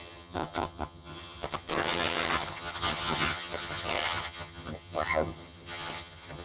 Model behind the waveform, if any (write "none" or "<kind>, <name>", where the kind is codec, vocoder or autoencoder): vocoder, HiFi-GAN